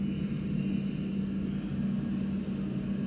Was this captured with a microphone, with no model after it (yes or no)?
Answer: yes